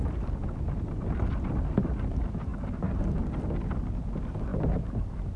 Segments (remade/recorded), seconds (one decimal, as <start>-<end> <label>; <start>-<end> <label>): 0.0-5.4 recorded

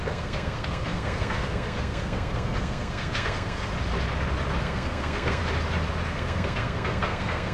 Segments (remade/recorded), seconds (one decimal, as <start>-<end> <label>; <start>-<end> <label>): 0.0-3.7 remade; 3.7-4.6 recorded; 4.6-5.4 remade; 5.4-6.1 recorded; 6.1-7.5 remade

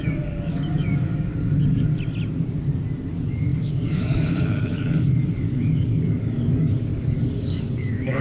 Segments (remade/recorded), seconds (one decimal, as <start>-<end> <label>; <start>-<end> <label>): 0.0-1.9 remade; 1.9-3.1 recorded; 3.1-8.2 remade

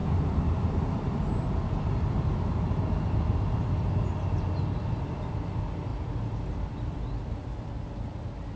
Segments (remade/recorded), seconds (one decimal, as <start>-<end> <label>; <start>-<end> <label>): 0.0-8.6 recorded

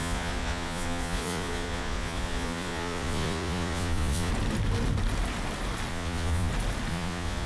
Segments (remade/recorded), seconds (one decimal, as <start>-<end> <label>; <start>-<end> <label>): 0.0-4.3 remade; 4.3-5.9 recorded; 5.9-6.5 remade; 6.5-6.9 recorded; 6.9-7.5 remade

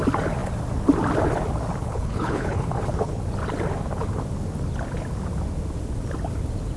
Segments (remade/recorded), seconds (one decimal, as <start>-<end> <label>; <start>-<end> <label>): 0.0-1.8 recorded; 1.8-3.2 remade; 3.2-6.8 recorded